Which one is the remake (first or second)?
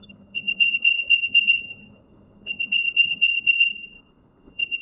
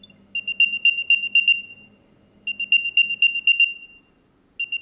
first